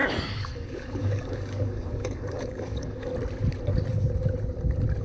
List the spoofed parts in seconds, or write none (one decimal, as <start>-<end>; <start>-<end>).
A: 0.0-3.1